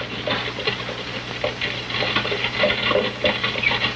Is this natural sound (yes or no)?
yes